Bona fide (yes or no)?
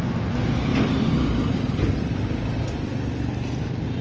yes